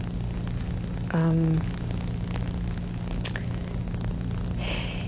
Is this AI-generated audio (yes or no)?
no